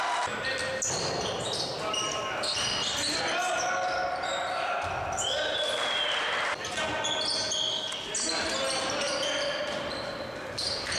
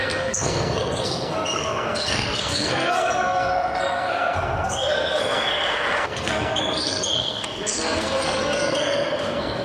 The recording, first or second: first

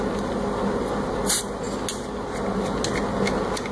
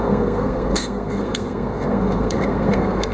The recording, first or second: first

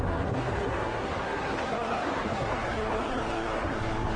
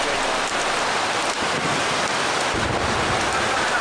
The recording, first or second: second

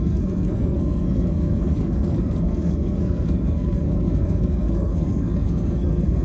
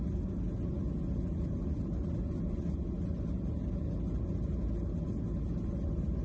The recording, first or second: second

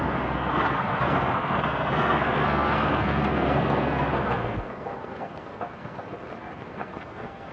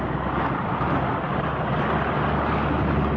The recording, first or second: second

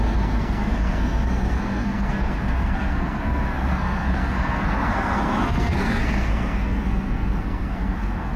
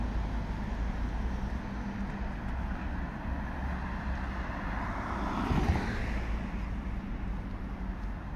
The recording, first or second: second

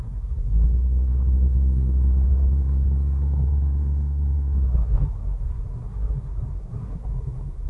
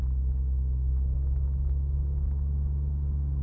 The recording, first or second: second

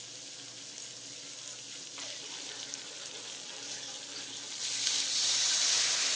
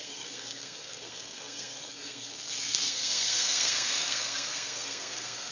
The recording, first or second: first